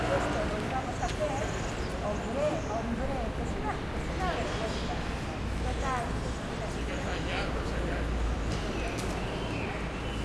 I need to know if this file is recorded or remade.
recorded